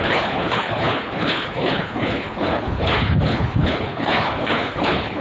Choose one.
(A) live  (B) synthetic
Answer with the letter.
B